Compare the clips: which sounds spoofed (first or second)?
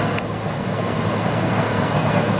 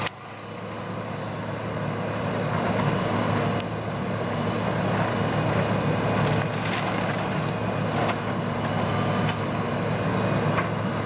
first